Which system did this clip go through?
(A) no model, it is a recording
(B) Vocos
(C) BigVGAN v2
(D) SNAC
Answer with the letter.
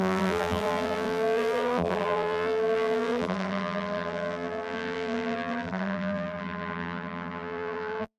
C